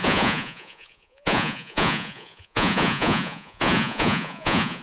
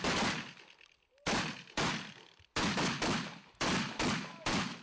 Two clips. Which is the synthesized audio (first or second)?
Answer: first